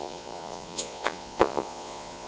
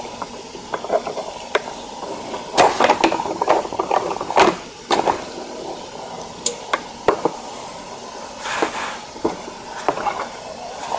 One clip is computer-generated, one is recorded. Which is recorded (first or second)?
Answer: second